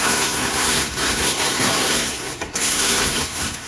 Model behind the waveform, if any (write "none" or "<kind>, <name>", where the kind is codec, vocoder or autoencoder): codec, SNAC